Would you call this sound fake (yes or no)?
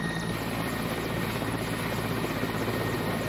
yes